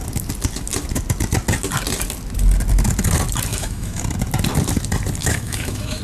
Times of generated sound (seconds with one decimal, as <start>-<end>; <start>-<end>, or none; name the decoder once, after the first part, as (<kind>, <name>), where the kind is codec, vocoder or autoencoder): 3.5-4.0 (autoencoder, DAC-VAE); 5.2-6.0